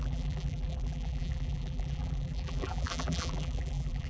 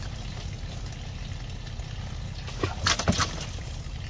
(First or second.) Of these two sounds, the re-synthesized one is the first